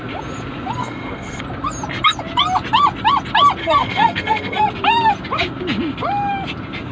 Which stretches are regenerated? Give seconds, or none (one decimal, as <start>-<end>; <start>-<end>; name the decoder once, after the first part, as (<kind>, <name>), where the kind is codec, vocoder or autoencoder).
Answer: 0.8-1.4 (codec, SNAC); 3.6-4.6